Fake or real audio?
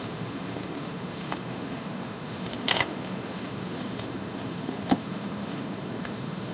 fake